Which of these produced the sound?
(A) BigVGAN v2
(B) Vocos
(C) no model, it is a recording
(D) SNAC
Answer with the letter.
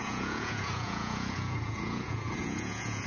B